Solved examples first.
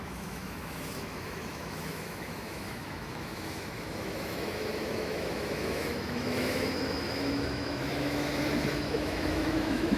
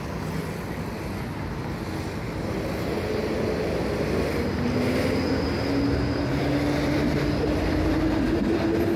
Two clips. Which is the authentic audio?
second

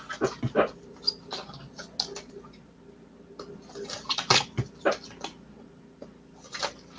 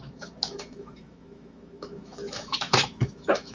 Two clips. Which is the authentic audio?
first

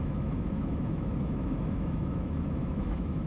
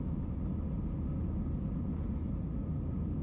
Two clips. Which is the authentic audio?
second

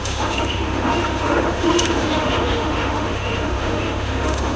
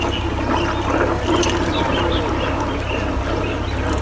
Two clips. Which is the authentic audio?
second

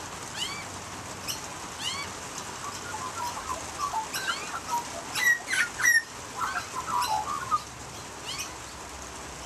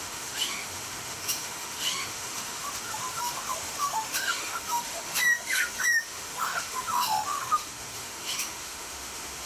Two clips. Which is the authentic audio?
first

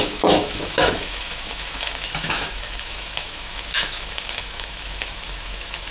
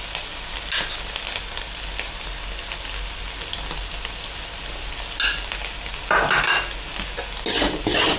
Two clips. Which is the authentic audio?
second